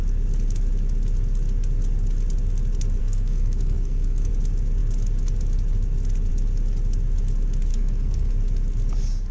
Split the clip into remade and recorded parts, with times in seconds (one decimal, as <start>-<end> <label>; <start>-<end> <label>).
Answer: 0.0-3.0 recorded; 3.0-4.3 remade; 4.3-7.7 recorded; 7.7-8.3 remade; 8.3-9.3 recorded